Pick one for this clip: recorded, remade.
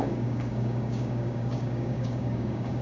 remade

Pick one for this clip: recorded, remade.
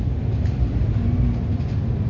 recorded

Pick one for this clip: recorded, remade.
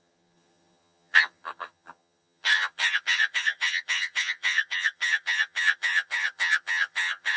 remade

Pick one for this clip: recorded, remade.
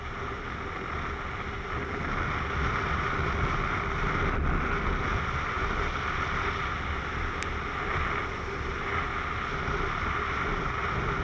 recorded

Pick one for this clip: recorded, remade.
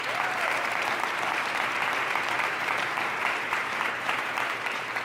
remade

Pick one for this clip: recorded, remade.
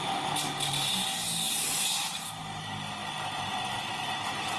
recorded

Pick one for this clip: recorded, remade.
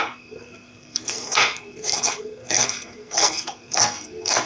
remade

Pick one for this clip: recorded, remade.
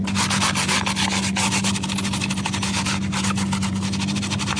recorded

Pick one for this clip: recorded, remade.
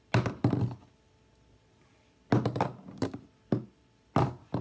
recorded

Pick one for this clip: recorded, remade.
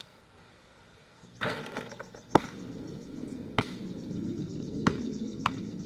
remade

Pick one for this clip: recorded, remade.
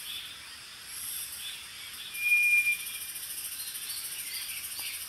recorded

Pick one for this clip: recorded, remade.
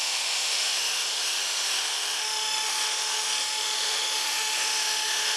remade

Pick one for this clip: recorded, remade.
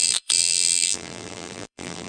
remade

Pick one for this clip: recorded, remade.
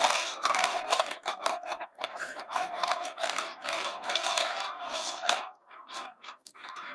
remade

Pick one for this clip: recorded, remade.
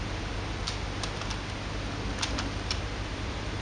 recorded